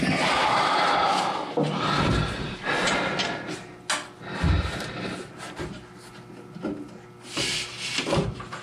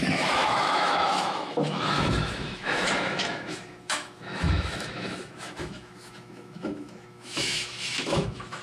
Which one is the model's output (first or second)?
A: second